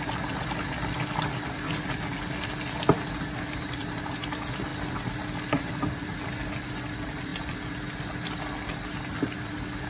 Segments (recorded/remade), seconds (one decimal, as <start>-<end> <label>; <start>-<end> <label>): 0.0-9.9 recorded

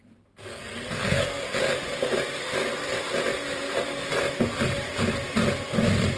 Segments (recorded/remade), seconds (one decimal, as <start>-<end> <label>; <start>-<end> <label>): 0.0-0.5 recorded; 0.5-1.6 remade; 1.6-6.2 recorded

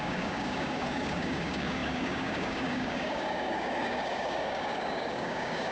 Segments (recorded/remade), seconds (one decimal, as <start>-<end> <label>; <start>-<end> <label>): 0.0-5.7 remade

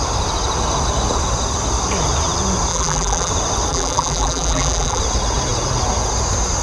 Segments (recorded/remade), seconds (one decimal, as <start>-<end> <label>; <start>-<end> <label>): 0.0-2.7 recorded; 2.7-3.3 remade; 3.3-3.7 recorded; 3.7-5.0 remade; 5.0-6.6 recorded

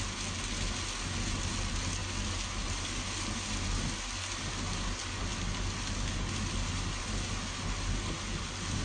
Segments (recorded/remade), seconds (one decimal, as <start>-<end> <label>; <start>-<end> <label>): 0.0-8.8 recorded

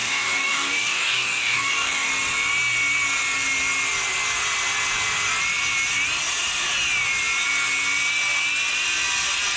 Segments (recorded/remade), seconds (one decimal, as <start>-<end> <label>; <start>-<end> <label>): 0.0-2.1 remade; 2.1-9.6 recorded

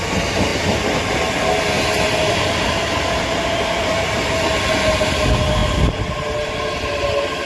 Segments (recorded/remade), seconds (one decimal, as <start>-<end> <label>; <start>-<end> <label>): 0.0-7.5 recorded